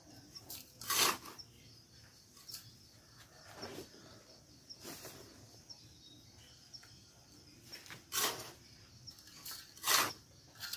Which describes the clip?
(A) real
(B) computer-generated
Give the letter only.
A